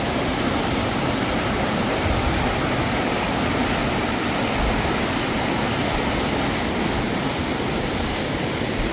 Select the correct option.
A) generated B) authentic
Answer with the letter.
B